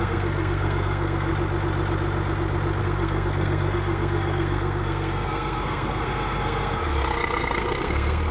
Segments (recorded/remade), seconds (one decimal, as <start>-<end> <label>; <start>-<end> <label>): 0.0-1.3 remade; 1.3-2.8 recorded; 2.8-8.3 remade